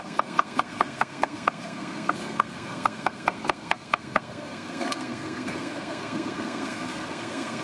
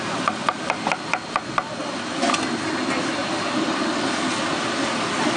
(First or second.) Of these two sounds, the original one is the second